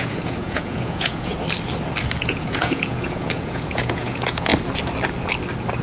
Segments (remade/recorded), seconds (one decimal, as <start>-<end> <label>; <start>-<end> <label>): 0.0-1.3 remade; 1.3-2.2 recorded; 2.2-4.5 remade; 4.5-5.8 recorded